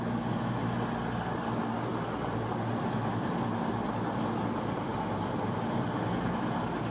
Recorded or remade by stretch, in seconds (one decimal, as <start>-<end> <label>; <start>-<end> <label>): 0.0-6.9 recorded

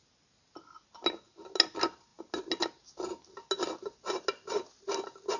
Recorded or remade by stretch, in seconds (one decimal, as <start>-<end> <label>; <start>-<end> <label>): 0.0-5.4 recorded